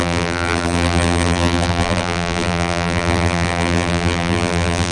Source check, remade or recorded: remade